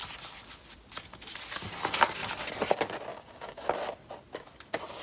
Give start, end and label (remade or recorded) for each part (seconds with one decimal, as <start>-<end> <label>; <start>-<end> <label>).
0.0-3.1 recorded; 3.1-3.7 remade; 3.7-5.0 recorded